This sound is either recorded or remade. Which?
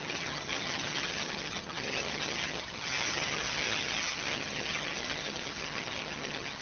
remade